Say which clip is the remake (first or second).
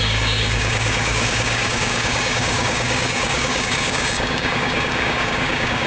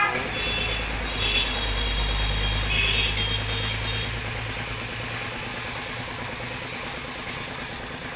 first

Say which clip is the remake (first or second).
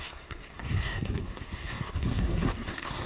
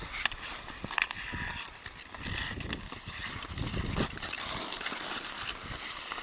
first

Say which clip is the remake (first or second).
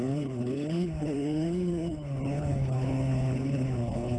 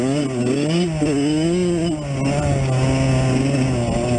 first